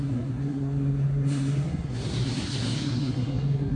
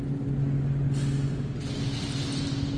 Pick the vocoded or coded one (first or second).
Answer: first